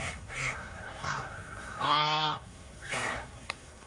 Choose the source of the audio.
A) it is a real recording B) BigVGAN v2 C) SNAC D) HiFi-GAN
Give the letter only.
C